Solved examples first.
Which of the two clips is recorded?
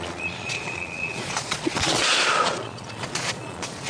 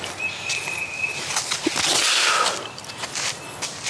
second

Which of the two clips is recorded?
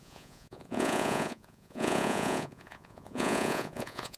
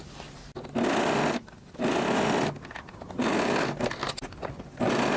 second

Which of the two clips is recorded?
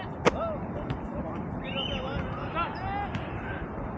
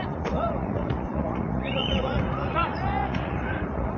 first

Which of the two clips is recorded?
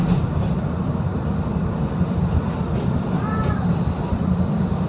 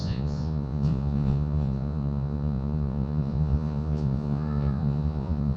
first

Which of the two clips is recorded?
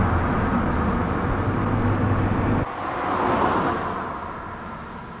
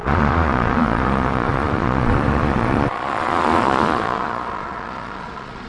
first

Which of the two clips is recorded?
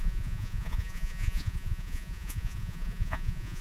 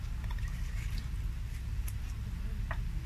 second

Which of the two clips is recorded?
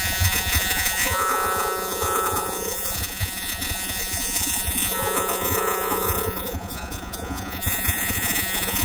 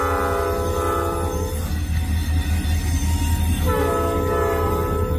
second